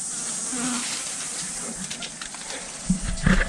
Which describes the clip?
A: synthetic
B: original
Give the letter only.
B